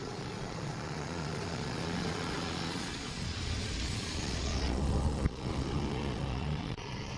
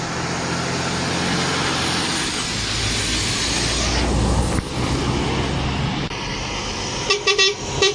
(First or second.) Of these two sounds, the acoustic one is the second